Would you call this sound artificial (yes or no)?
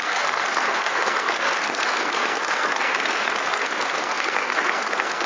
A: yes